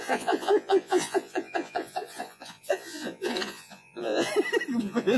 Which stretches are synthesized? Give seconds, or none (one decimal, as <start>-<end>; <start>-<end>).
0.0-4.3; 4.8-5.2